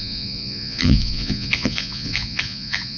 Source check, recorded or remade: remade